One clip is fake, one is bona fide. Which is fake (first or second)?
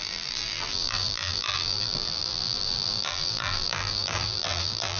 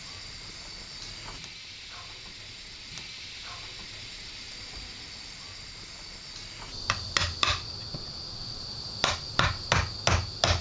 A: first